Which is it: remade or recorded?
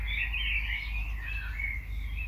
recorded